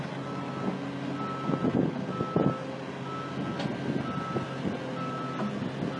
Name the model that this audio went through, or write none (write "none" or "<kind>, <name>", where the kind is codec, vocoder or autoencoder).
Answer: none